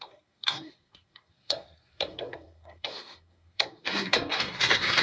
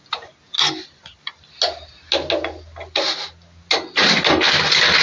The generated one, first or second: first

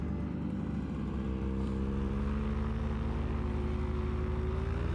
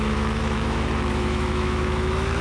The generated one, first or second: second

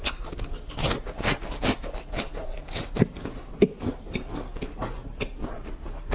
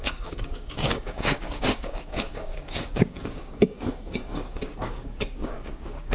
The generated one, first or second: second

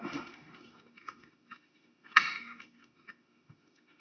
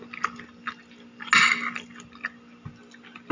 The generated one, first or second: first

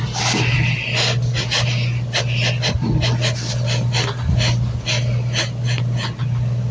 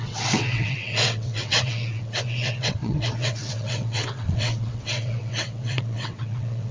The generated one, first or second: second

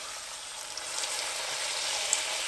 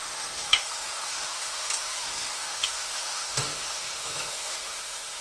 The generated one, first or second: second